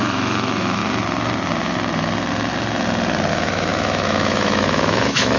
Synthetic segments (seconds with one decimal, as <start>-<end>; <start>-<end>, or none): 0.0-0.8; 3.3-5.4